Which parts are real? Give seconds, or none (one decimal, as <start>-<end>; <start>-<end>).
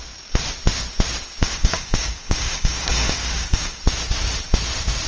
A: 0.0-1.4; 3.8-5.1